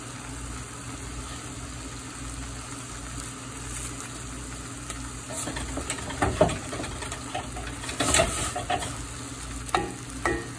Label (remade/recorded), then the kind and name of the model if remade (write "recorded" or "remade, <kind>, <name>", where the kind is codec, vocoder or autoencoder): recorded